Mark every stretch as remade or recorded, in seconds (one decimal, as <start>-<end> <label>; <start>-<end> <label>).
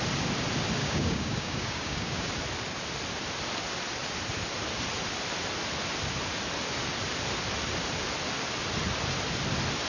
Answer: 0.0-0.8 recorded; 0.8-2.3 remade; 2.3-9.9 recorded